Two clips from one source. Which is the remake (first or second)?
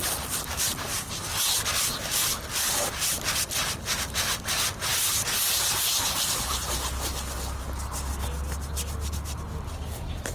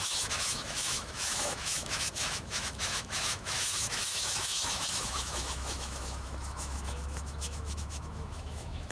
second